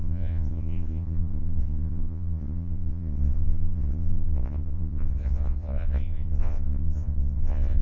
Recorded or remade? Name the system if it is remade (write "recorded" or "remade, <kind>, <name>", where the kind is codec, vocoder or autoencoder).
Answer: remade, vocoder, Vocos